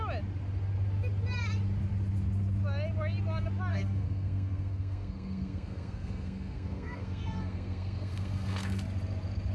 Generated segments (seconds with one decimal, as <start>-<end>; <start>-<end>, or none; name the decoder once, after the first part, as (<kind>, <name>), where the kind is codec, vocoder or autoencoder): 3.7-8.8 (codec, SNAC)